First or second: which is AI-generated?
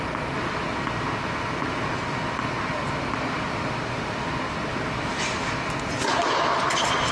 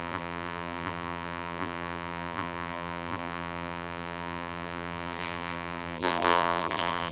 second